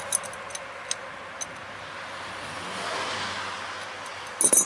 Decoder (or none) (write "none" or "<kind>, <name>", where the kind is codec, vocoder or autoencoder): none